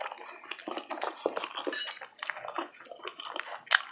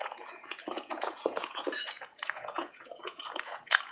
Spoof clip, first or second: second